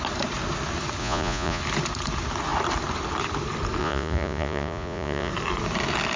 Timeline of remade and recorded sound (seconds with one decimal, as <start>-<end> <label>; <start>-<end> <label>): 0.0-1.0 recorded; 1.0-1.6 remade; 1.6-3.8 recorded; 3.8-5.3 remade; 5.3-6.2 recorded